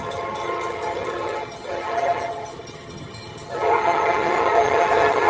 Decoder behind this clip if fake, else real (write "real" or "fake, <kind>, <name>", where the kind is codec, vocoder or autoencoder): fake, vocoder, HiFi-GAN